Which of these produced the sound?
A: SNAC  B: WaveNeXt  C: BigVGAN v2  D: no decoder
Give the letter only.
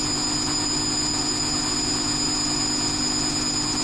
D